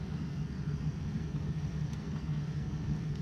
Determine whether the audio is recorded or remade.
remade